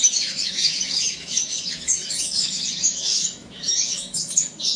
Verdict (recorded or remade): remade